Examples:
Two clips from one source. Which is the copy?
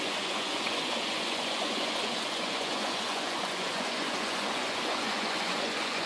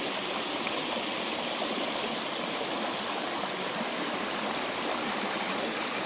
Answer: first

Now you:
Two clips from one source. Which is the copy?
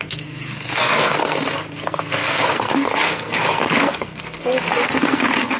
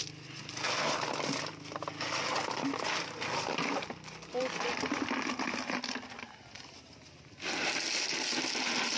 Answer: first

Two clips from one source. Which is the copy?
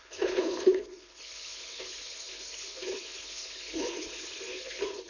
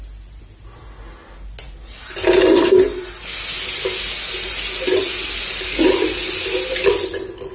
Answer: first